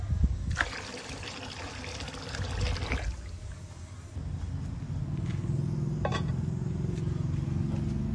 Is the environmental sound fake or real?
real